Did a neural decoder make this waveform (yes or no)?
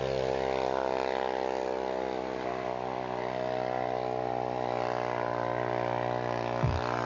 no